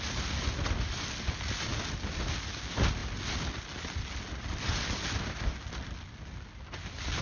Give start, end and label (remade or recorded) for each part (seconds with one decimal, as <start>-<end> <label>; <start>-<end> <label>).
0.0-7.2 recorded